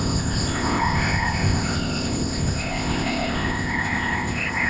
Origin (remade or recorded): remade